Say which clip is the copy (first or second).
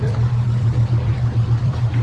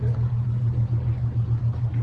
first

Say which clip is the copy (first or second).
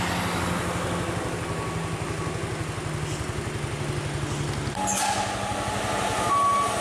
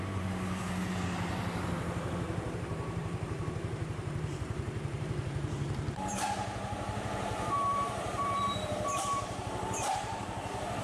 second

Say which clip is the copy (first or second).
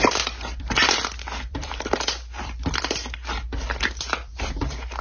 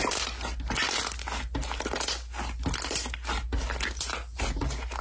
first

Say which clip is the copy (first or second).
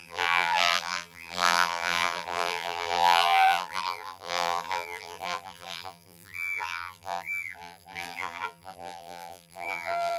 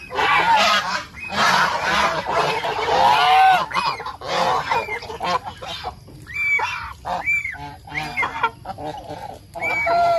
first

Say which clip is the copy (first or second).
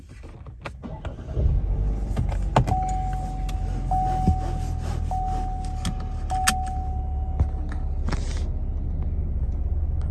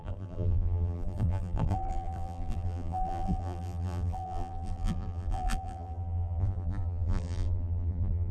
second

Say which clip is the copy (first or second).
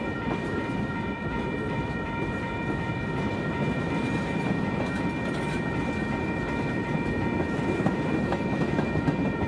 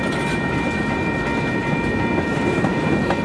first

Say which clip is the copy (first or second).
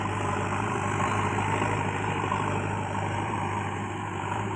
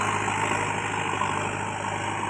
first